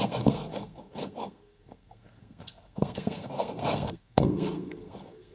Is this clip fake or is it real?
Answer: fake